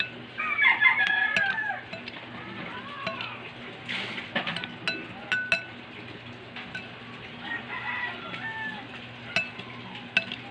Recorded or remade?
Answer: recorded